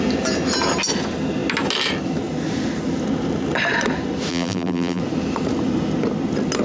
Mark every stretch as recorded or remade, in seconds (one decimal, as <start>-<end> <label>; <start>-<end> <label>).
0.0-4.3 recorded; 4.3-5.0 remade; 5.0-6.6 recorded